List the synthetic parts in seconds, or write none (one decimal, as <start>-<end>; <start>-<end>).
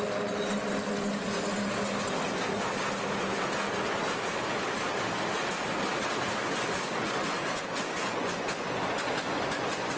6.4-10.0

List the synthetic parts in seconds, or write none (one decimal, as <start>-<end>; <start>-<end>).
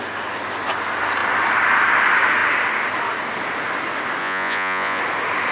4.2-5.0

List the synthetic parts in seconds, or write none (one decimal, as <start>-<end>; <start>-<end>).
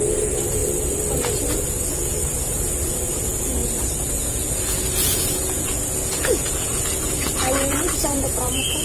0.0-0.6; 1.9-3.6; 4.2-8.8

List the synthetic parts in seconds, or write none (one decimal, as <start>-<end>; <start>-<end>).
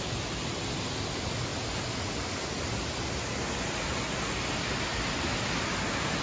none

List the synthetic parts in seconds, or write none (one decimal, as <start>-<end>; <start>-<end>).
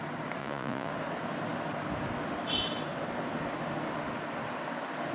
0.4-0.9